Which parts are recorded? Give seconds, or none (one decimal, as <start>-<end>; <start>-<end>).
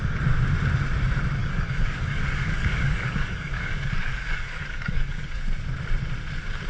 0.0-1.4; 5.4-6.7